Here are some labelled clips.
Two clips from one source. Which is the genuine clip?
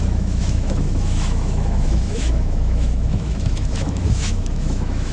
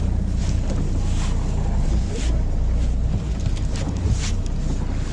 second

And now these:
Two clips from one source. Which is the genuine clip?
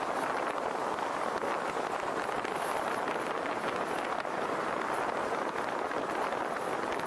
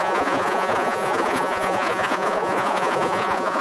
first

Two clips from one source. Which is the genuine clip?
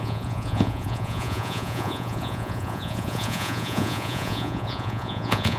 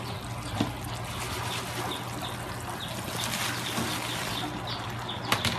second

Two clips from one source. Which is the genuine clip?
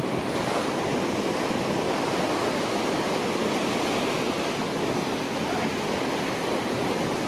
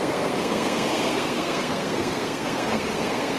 first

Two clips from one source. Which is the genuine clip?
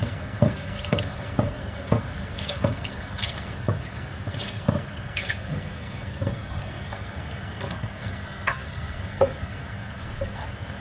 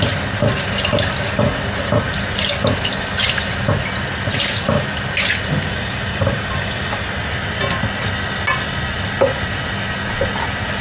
second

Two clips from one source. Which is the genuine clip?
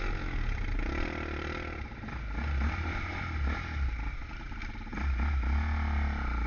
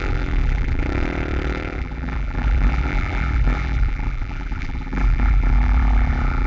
first